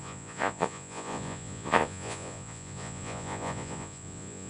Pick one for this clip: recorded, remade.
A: remade